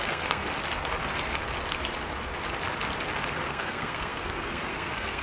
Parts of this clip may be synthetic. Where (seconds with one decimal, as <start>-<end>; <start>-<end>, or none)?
0.0-0.4; 3.5-5.2

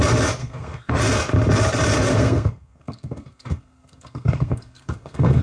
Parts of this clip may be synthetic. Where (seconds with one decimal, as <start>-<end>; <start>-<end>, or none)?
0.4-0.9; 2.1-5.4

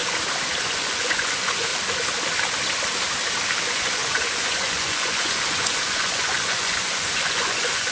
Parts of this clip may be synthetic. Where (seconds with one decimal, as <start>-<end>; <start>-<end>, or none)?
0.6-1.7; 3.6-7.9

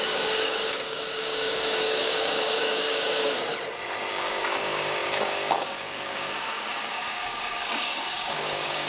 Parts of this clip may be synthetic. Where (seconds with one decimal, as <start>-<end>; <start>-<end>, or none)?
0.0-3.5; 4.1-8.9

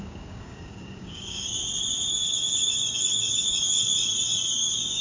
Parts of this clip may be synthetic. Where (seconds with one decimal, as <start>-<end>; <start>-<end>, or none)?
0.0-1.6; 2.1-3.8; 4.5-5.0

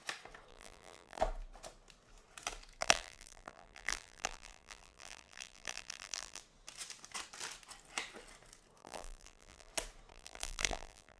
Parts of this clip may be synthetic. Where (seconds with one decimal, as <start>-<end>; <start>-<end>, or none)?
0.5-1.2; 2.8-6.4; 8.8-9.7; 10.1-11.2